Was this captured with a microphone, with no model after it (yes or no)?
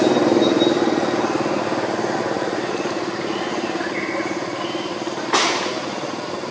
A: yes